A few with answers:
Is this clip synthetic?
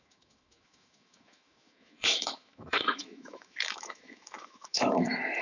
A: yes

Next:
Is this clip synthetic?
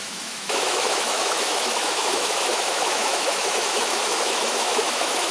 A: yes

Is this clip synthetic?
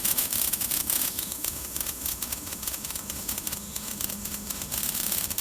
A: yes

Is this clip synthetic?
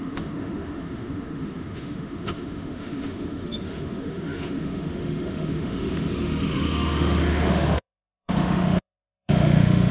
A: yes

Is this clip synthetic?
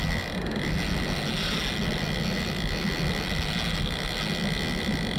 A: no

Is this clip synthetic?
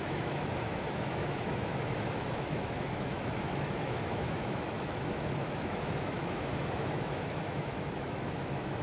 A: yes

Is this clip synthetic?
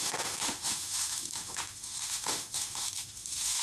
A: yes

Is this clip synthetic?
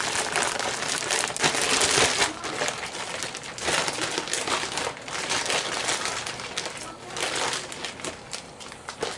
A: no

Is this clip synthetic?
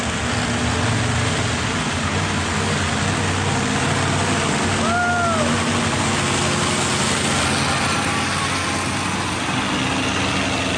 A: no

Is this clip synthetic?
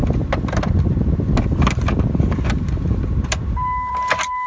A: no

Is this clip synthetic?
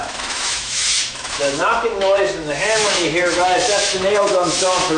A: yes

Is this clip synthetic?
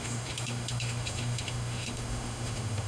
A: yes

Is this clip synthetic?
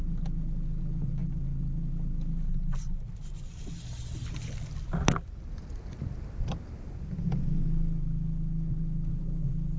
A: no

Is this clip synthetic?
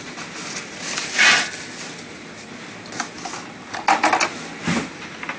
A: no